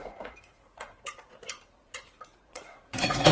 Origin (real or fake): fake